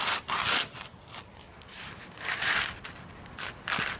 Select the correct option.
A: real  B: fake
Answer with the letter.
A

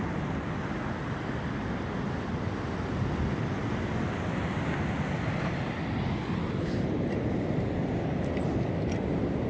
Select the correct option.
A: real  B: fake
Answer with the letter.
A